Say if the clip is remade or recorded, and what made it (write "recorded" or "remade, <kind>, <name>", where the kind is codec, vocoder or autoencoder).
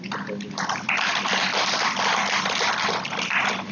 recorded